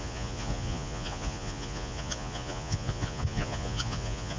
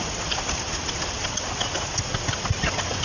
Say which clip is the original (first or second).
second